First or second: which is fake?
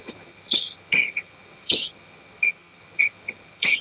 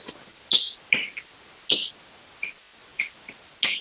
first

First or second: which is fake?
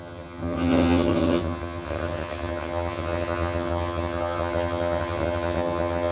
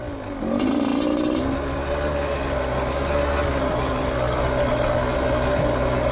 first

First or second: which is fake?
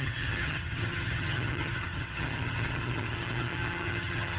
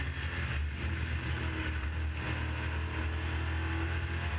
first